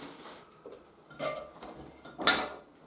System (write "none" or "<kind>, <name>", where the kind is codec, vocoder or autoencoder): none